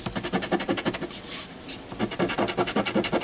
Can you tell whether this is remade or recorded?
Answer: recorded